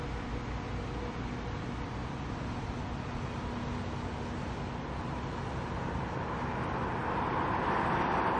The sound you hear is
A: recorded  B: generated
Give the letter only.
A